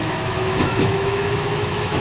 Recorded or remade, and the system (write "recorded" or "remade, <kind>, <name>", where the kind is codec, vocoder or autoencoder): remade, autoencoder, DAC-VAE